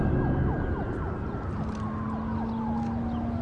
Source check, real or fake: real